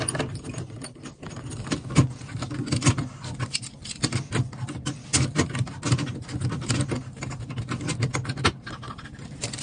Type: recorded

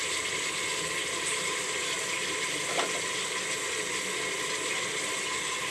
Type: recorded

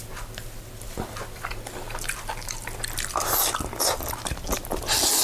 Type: recorded